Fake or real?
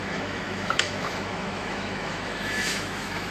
fake